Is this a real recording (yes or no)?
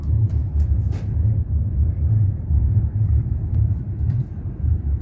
no